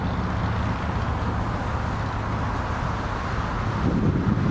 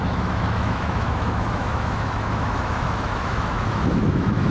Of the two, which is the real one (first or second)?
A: first